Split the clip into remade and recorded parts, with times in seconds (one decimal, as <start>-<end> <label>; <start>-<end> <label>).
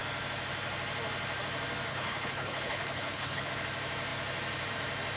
0.0-1.9 recorded; 1.9-3.5 remade; 3.5-5.2 recorded